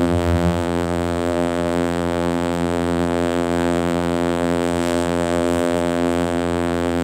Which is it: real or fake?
fake